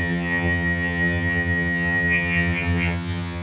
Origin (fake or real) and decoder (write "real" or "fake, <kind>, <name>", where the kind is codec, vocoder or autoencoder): fake, vocoder, HiFi-GAN